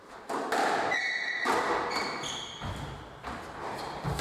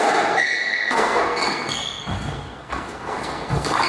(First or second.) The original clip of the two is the first